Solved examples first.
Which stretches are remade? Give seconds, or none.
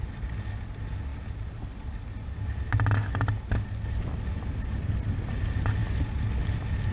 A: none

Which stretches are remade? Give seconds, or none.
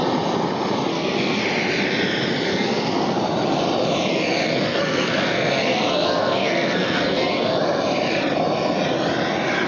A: 0.9-1.4; 2.5-3.2; 4.1-7.6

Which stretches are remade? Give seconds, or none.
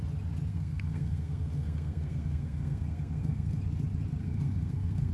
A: 0.5-3.6; 4.2-5.1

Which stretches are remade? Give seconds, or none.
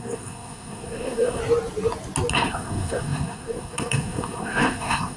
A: 0.0-1.4; 2.3-5.2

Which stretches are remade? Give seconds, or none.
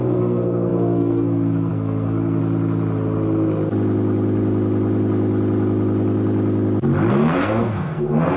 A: 0.0-2.4; 7.1-8.4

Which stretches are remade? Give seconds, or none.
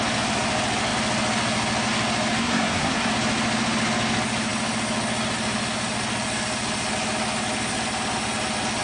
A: 2.4-3.1